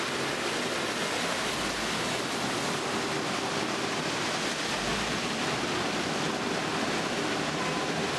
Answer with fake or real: real